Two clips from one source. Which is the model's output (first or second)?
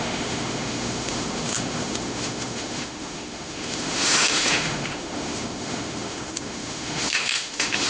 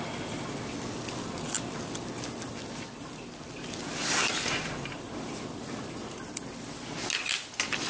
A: first